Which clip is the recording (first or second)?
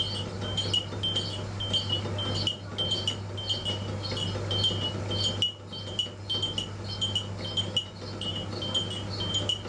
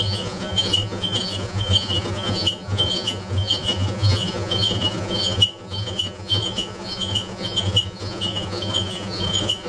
first